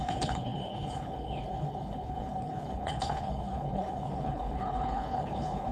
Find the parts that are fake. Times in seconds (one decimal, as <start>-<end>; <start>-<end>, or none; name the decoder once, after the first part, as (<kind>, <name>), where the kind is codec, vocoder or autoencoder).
0.0-5.7 (codec, HILCodec)